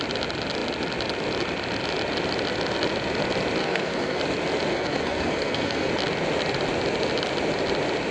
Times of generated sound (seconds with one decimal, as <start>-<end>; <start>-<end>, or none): 3.6-4.2; 4.7-5.9